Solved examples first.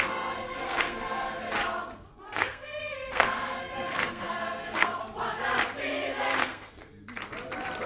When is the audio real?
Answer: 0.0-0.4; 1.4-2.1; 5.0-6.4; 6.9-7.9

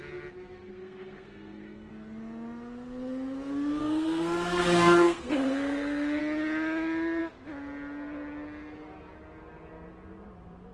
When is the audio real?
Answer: 0.0-0.6; 1.9-3.8; 6.2-10.7

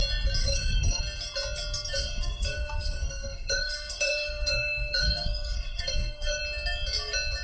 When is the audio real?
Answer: 0.0-0.4; 1.0-2.0; 6.4-7.4

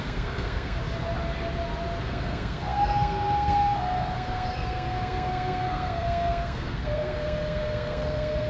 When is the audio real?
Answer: 0.8-2.0

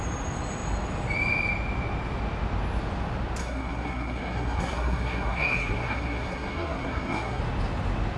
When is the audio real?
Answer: 0.0-3.4; 7.4-8.2

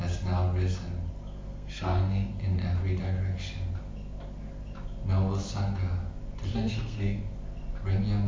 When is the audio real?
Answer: 0.0-1.5; 2.3-6.5; 7.2-8.3

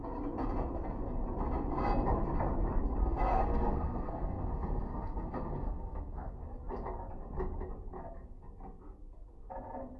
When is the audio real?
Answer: 0.0-3.0; 6.3-10.0